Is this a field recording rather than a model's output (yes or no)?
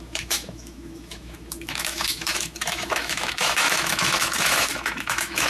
no